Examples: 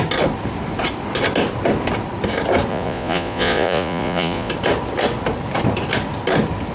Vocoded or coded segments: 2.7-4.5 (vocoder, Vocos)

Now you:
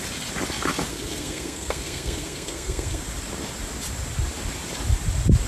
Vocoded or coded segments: 0.9-3.0 (codec, SNAC)

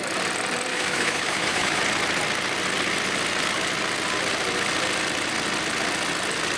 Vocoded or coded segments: 0.7-1.8 (autoencoder, DAC-VAE)

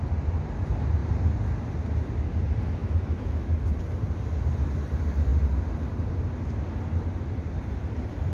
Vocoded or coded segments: 2.8-3.8 (autoencoder, DAC-VAE)

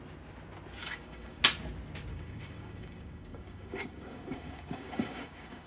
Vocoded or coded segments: 0.8-1.4 (codec, DAC); 2.1-5.7

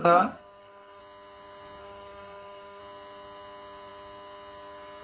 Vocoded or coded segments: 0.0-1.0 (codec, SNAC); 1.8-2.8

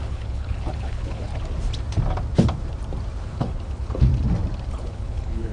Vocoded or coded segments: 0.0-1.3 (codec, HILCodec); 3.3-4.1; 4.7-5.5